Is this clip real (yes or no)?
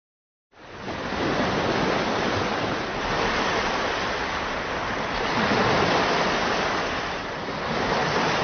yes